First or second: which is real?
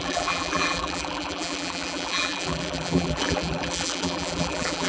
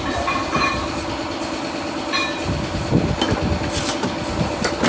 second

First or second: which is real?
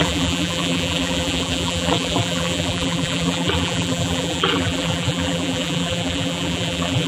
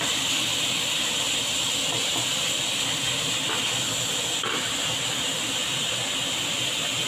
second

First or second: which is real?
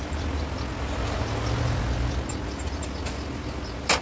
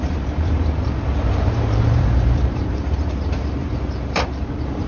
first